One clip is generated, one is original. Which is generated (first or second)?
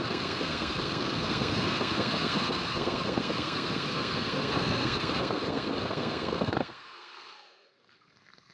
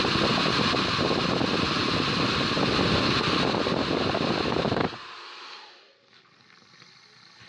first